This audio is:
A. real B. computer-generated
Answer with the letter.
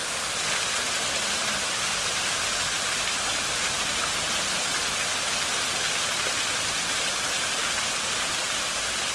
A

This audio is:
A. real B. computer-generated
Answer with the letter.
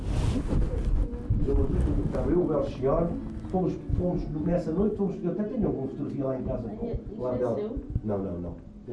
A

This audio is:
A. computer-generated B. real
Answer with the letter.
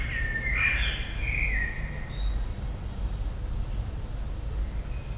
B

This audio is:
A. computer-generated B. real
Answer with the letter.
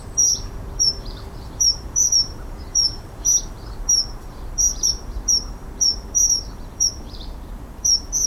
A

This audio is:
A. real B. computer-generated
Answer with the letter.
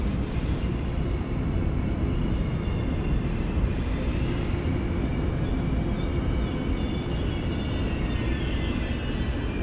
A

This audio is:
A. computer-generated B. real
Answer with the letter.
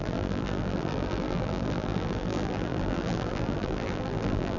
A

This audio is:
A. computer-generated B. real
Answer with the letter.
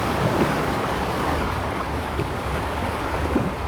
A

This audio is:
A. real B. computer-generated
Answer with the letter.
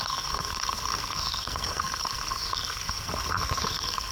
B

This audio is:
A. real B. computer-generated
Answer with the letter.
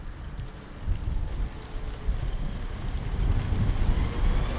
A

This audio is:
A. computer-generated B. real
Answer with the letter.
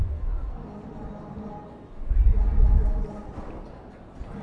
B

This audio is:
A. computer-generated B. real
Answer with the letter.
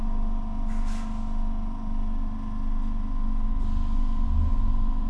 B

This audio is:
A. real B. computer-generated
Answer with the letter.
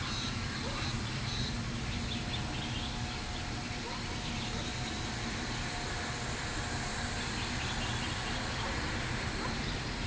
A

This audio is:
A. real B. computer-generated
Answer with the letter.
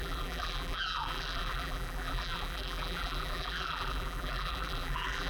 B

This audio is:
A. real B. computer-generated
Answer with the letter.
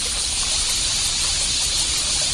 B